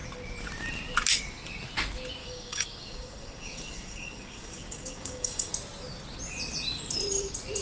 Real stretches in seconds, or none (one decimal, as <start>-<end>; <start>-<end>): 0.0-2.2; 5.5-7.6